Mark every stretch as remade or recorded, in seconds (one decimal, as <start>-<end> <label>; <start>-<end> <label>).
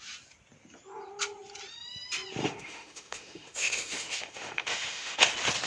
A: 0.0-2.4 recorded; 2.4-5.2 remade; 5.2-5.7 recorded